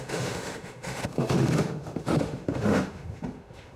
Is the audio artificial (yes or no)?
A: yes